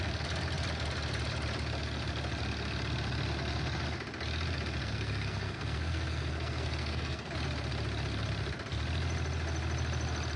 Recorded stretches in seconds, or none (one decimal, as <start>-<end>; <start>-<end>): 0.0-4.8; 7.3-10.4